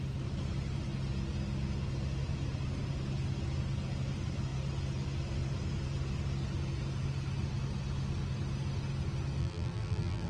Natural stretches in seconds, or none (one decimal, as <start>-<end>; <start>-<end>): 0.0-9.4